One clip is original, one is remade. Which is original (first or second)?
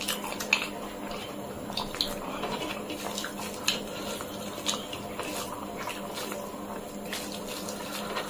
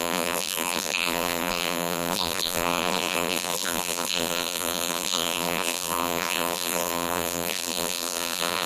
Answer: first